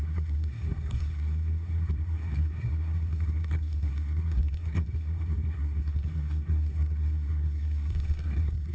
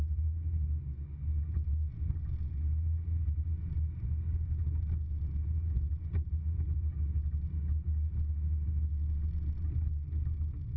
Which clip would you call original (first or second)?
second